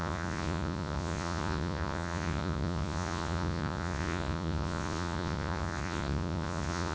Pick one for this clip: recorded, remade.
remade